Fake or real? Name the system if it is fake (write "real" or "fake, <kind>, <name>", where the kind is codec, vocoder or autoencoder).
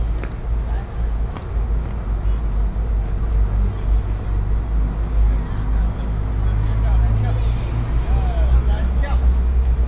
real